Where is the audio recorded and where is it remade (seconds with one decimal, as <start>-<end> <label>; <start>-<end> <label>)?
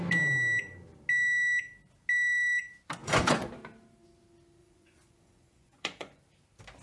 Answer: 0.0-3.0 recorded; 3.0-3.5 remade; 3.5-4.6 recorded; 4.6-6.2 remade; 6.2-6.8 recorded